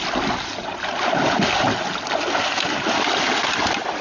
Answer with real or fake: real